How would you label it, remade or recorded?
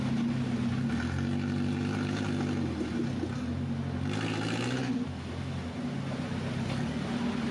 recorded